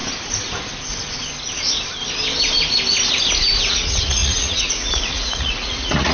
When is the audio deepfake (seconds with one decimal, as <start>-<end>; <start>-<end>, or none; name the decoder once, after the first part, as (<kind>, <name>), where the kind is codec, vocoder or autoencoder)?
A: 3.7-6.1 (vocoder, Vocos)

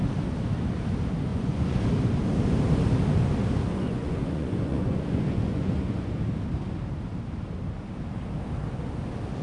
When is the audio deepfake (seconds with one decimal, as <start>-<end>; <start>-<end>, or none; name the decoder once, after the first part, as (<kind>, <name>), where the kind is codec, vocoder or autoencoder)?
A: 1.3-1.8 (vocoder, Vocos); 3.7-6.1